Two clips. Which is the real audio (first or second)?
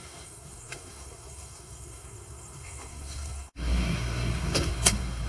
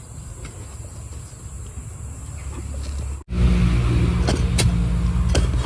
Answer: second